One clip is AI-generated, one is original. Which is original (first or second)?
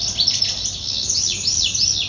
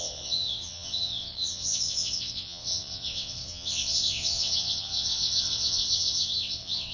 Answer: first